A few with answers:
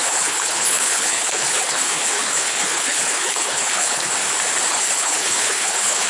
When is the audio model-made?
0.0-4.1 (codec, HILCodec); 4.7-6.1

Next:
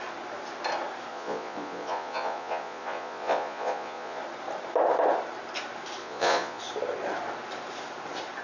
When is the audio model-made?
1.1-4.2 (vocoder, Vocos); 6.0-6.6

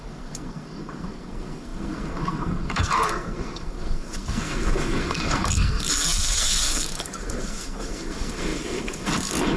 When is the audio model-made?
0.0-9.6 (codec, SNAC)

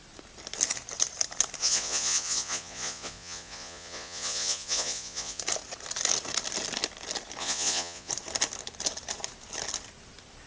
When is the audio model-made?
1.6-5.4 (vocoder, Vocos); 7.4-8.1